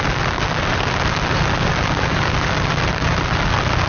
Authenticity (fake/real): real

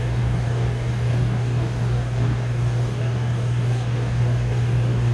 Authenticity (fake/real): fake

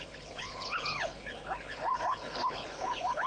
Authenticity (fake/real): fake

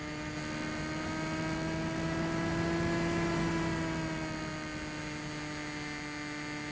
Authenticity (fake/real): real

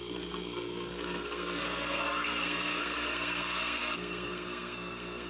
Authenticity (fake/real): fake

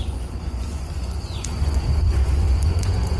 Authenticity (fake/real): fake